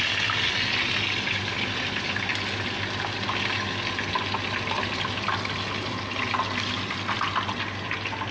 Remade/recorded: recorded